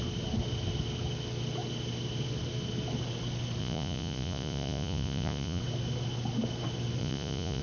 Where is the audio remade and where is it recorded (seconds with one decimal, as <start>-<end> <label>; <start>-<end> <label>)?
0.0-3.6 recorded; 3.6-5.6 remade; 5.6-7.0 recorded; 7.0-7.6 remade